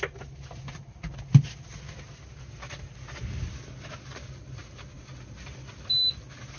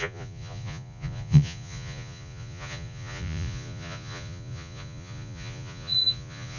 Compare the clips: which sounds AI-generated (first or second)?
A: second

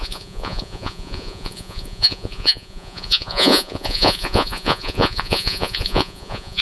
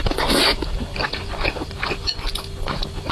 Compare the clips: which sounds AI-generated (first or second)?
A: first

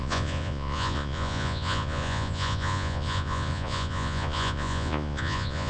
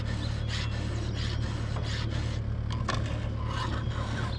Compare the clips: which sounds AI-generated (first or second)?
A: first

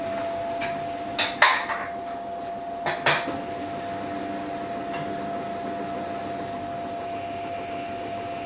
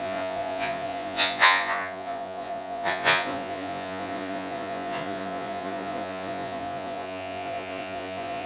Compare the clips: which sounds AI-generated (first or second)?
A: second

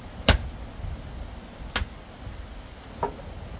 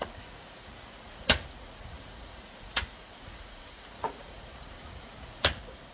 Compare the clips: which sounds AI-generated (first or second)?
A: second